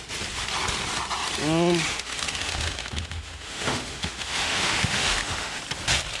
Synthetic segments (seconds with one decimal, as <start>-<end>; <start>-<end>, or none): 1.9-5.6